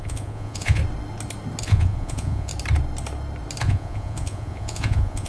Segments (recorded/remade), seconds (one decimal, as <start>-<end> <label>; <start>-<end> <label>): 0.0-0.8 remade; 0.8-1.6 recorded; 1.6-2.5 remade; 2.5-3.6 recorded; 3.6-5.3 remade

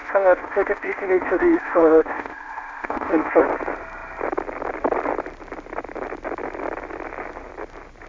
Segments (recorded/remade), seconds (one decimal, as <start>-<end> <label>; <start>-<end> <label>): 0.0-3.4 remade; 3.4-8.1 recorded

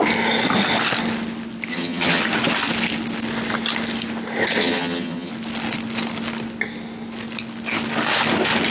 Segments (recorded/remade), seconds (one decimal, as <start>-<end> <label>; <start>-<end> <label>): 0.0-1.7 recorded; 1.7-2.2 remade; 2.2-4.6 recorded; 4.6-5.3 remade; 5.3-8.7 recorded

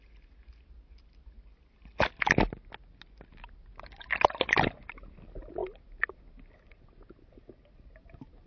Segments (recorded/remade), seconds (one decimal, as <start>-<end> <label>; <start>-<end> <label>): 0.0-8.5 recorded

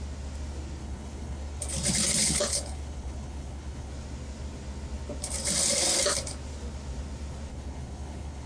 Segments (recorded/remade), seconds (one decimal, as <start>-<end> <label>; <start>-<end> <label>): 0.0-0.8 recorded; 0.8-1.6 remade; 1.6-2.2 recorded; 2.2-3.9 remade; 3.9-7.5 recorded; 7.5-8.5 remade

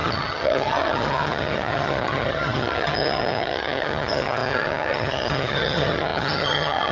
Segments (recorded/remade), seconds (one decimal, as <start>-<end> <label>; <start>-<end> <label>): 0.0-6.9 remade

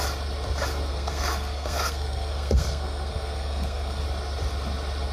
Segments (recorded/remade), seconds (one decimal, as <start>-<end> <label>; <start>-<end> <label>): 0.0-0.9 recorded; 0.9-4.0 remade; 4.0-5.1 recorded

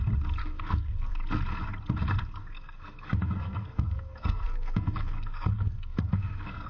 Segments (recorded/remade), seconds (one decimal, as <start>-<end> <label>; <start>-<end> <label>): 0.0-0.4 recorded; 0.4-1.1 remade; 1.1-2.4 recorded; 2.4-6.7 remade